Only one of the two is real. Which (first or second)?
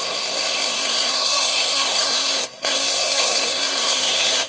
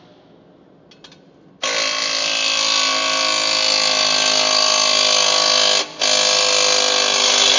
second